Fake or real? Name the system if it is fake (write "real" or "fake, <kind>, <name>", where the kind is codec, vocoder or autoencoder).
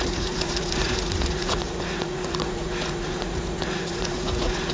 fake, vocoder, Vocos